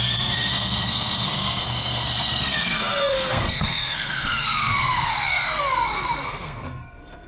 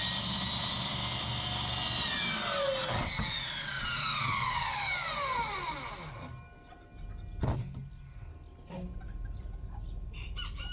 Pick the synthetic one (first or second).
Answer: first